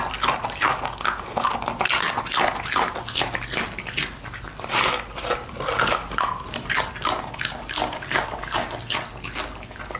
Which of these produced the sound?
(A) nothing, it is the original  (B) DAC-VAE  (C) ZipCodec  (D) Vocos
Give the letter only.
A